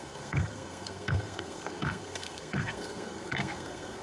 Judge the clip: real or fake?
fake